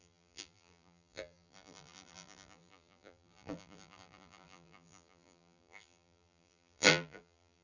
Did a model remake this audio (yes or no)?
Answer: yes